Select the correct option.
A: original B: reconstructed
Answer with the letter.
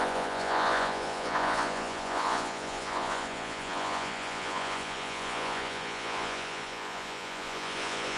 B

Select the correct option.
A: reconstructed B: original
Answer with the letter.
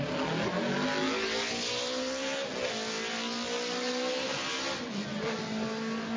B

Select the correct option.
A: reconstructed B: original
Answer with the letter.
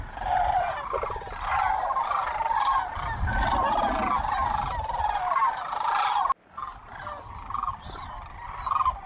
B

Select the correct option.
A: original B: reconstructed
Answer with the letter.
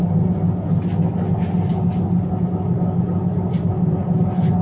A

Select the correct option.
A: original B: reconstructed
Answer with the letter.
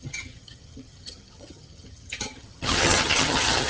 B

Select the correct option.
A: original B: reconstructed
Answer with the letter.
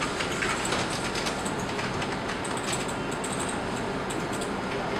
A